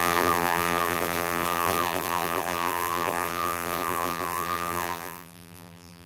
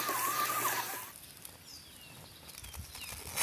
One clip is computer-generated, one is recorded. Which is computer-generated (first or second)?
first